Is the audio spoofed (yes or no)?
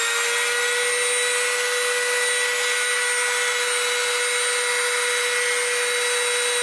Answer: no